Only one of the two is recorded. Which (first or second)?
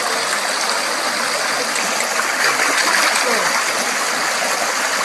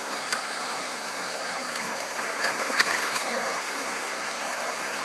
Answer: first